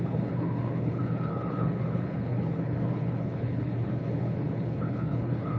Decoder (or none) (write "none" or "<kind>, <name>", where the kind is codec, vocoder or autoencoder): codec, HILCodec